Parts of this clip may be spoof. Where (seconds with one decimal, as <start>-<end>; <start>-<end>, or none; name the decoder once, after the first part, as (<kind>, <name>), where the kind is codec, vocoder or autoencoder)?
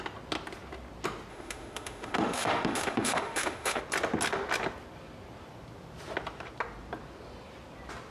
1.3-3.8 (autoencoder, DAC-VAE)